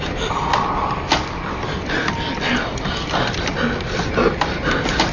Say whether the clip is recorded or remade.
recorded